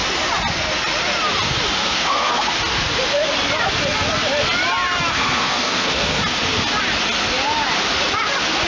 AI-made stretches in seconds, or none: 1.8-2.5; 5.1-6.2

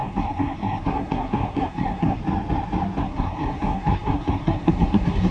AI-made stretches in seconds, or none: 0.0-2.2; 3.0-5.3

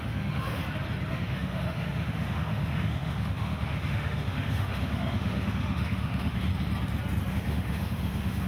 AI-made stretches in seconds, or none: 0.0-0.6; 1.1-6.5; 7.3-8.5

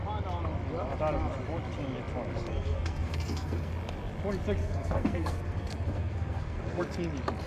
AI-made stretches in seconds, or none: 2.5-3.7; 4.6-6.8